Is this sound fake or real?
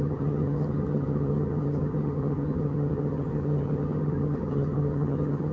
fake